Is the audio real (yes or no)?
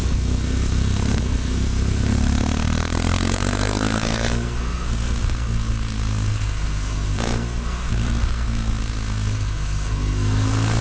no